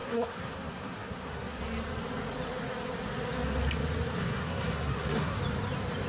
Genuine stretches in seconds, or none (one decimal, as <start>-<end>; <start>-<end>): 1.6-4.2; 5.4-6.1